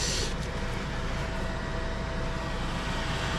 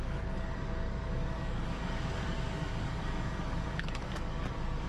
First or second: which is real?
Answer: first